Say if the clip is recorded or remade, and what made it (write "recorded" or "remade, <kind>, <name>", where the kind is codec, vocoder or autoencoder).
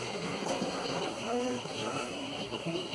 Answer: remade, codec, SNAC